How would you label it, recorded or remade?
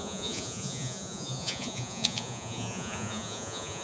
remade